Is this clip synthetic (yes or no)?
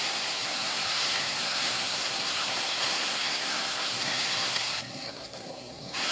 yes